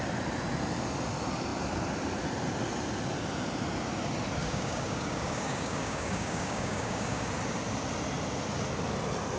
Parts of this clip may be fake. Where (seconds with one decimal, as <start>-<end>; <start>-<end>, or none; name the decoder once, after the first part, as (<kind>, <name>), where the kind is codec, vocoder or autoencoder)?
4.4-7.3 (codec, DAC)